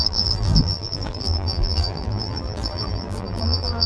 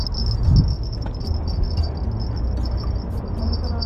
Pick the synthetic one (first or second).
first